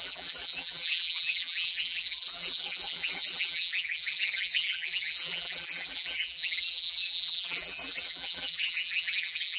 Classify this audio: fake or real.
fake